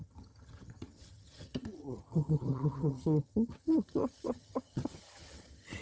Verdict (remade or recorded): remade